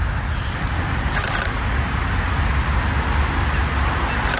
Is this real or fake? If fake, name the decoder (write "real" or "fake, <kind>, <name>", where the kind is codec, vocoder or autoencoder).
real